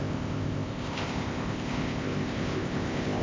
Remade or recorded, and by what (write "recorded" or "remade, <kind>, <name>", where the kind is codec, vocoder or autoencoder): remade, codec, ZipCodec